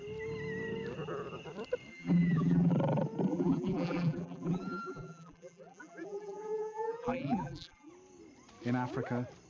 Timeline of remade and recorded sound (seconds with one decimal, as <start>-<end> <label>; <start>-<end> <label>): 0.0-1.9 recorded; 1.9-2.7 remade; 2.7-3.3 recorded; 3.3-7.9 remade; 7.9-9.5 recorded